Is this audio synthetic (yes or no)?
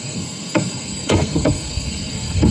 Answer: yes